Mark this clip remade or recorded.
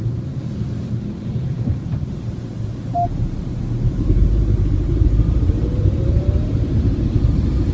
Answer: remade